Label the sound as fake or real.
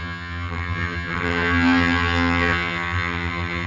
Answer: fake